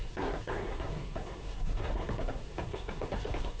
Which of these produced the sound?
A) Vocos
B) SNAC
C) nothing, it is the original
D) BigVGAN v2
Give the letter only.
B